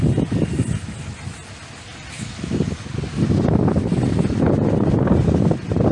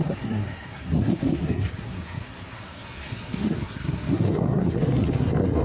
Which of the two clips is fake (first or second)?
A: second